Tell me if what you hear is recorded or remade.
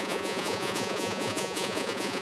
remade